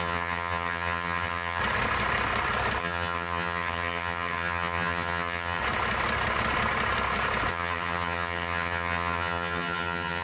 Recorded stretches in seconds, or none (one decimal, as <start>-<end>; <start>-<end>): 1.6-2.8; 5.6-7.5